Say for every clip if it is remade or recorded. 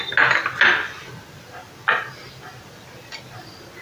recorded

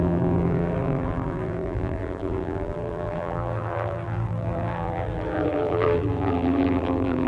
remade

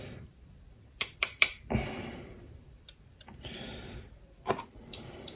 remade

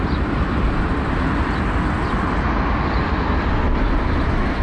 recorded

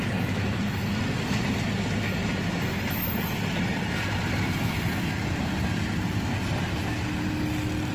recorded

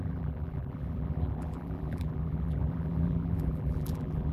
remade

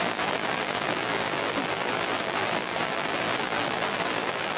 remade